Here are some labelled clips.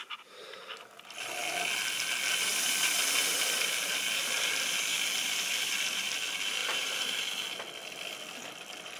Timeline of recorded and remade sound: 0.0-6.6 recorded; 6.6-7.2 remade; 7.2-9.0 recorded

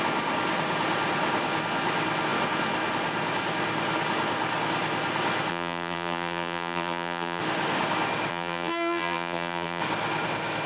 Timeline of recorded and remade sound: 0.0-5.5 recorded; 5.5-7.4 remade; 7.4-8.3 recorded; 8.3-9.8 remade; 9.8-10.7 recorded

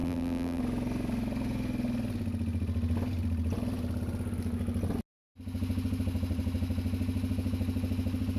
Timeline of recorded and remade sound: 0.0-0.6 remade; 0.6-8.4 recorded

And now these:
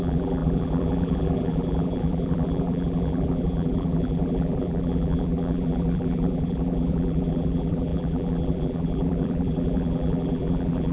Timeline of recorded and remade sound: 0.0-10.9 remade